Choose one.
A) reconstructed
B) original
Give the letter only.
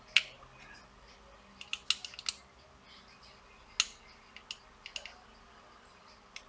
B